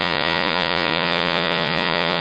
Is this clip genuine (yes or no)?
no